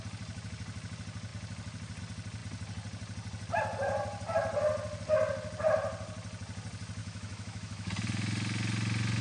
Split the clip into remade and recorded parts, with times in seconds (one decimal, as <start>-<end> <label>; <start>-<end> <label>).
0.0-7.0 recorded; 7.0-7.9 remade; 7.9-9.2 recorded